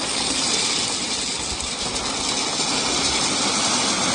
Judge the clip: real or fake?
real